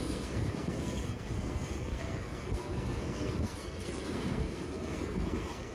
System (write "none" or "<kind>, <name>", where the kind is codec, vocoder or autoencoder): codec, SNAC